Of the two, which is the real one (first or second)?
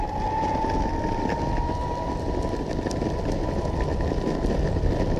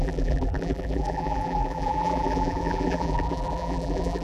first